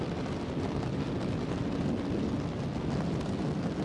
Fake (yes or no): no